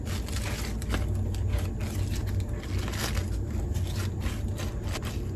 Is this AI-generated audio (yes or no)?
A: no